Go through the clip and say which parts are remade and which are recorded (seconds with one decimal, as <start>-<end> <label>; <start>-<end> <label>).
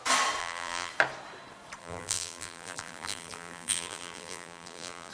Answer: 0.0-0.4 recorded; 0.4-0.9 remade; 0.9-1.8 recorded; 1.8-5.1 remade